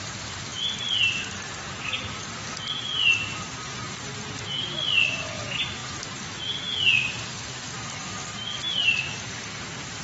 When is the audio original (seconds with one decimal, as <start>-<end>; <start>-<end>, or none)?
0.0-10.0